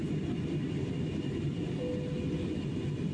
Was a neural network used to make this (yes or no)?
no